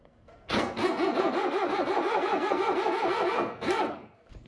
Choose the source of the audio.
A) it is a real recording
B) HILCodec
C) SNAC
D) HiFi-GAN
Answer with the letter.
C